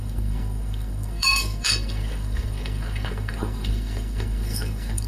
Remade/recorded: remade